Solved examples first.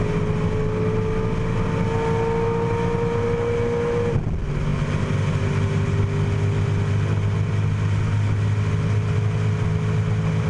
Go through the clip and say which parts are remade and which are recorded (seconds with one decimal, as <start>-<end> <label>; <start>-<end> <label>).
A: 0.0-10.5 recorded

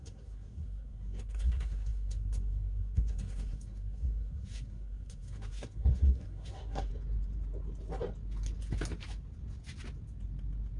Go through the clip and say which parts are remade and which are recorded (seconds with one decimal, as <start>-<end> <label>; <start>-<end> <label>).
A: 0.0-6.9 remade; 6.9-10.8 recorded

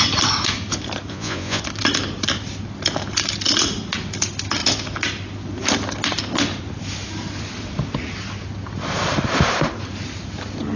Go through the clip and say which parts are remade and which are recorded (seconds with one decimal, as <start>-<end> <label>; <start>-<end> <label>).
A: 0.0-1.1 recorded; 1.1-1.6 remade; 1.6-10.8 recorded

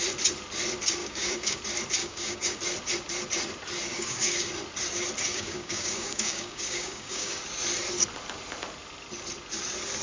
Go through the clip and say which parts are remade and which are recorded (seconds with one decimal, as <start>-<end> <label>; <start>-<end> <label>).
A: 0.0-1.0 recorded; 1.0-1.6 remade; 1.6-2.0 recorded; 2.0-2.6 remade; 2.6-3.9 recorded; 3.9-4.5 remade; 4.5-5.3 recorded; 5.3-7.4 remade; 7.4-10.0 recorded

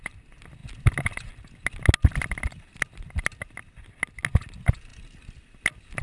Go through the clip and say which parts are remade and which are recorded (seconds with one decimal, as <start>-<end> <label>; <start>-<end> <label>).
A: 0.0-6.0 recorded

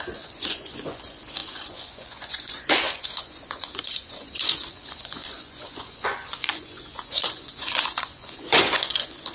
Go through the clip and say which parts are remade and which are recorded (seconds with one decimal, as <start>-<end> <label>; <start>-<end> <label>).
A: 0.0-9.3 remade